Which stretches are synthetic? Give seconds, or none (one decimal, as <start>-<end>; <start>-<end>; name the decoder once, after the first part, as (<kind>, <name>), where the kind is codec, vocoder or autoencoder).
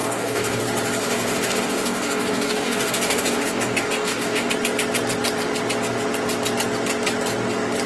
0.0-0.6 (codec, DAC); 1.0-4.5